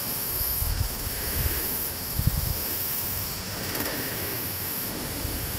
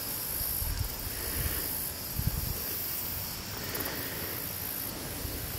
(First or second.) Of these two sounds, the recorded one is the second